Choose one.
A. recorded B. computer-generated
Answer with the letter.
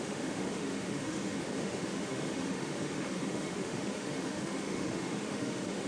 B